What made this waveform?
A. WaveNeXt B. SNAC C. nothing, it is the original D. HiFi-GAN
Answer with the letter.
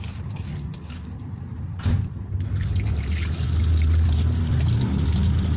C